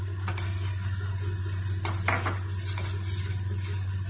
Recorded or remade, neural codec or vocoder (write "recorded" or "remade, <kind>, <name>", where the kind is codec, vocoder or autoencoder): recorded